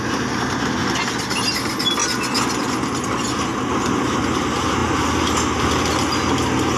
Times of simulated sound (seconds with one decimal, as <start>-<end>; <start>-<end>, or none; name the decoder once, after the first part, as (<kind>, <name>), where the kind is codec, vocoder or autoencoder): none